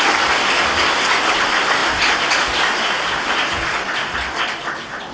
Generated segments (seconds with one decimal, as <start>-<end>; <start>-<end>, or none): none